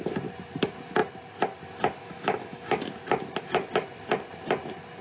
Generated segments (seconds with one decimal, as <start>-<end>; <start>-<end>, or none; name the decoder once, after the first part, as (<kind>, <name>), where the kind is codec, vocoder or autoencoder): 2.0-2.8 (autoencoder, DAC-VAE)